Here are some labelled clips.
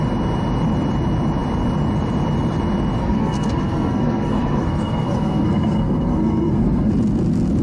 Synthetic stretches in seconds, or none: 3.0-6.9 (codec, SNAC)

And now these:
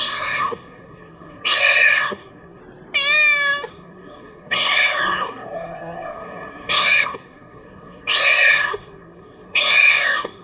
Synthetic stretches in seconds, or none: 0.0-2.6 (codec, SNAC); 3.7-10.4